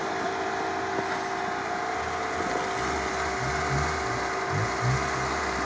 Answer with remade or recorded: recorded